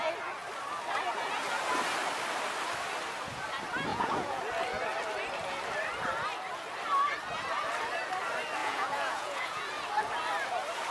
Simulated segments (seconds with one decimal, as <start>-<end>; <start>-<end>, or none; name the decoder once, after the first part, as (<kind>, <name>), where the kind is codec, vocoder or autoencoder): 3.9-4.4 (vocoder, Vocos); 8.6-9.6

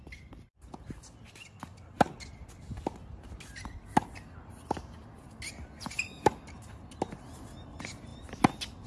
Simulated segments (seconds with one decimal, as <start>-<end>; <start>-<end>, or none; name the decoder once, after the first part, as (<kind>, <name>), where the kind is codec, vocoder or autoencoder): none